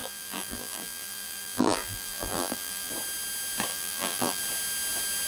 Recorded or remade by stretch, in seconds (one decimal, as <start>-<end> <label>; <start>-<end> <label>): 0.0-2.9 remade; 2.9-3.7 recorded; 3.7-4.4 remade; 4.4-5.3 recorded

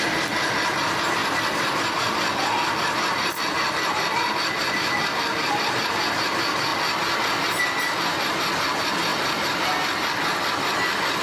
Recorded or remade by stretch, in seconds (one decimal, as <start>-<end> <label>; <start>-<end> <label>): 0.0-1.2 recorded; 1.2-3.3 remade; 3.3-4.6 recorded; 4.6-5.6 remade; 5.6-11.2 recorded

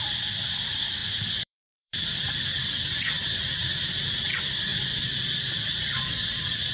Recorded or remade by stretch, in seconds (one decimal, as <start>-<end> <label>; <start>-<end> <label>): 0.0-6.7 remade

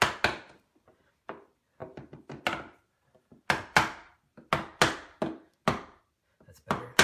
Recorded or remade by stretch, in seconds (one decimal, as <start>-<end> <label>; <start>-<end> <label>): 0.0-7.0 recorded

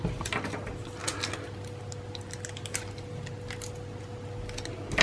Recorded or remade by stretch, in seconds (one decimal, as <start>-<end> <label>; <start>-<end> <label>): 0.0-5.0 recorded

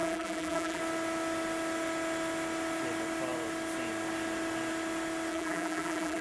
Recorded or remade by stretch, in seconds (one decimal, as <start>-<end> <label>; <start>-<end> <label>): 0.0-0.8 remade; 0.8-5.3 recorded; 5.3-6.2 remade

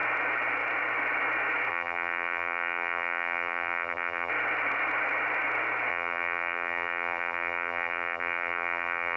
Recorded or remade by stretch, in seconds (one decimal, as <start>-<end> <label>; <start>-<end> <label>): 0.0-1.7 recorded; 1.7-4.3 remade; 4.3-5.9 recorded; 5.9-9.2 remade